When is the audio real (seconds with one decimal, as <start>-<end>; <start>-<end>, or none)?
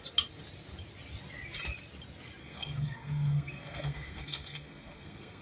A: 0.0-2.4